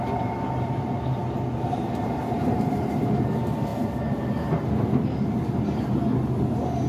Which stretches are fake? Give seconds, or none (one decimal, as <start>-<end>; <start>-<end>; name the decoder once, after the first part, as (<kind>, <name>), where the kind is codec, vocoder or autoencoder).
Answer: 0.0-1.2 (vocoder, BigVGAN v2); 1.7-3.7